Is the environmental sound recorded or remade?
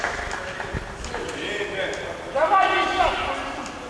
recorded